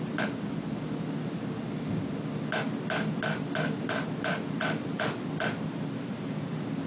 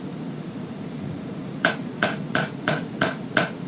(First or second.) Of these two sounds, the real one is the first